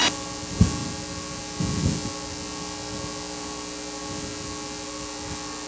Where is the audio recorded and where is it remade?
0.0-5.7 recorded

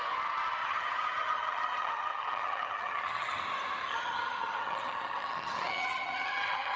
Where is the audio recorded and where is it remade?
0.0-0.6 recorded; 0.6-3.4 remade; 3.4-3.8 recorded; 3.8-6.8 remade

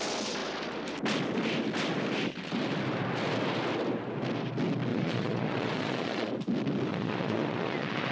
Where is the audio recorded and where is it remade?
0.0-4.9 recorded; 4.9-6.3 remade; 6.3-6.9 recorded; 6.9-8.1 remade